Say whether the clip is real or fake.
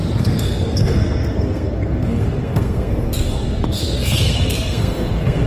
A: fake